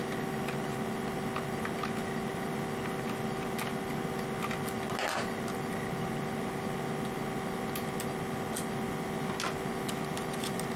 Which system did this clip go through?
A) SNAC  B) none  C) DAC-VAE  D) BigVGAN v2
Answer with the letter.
B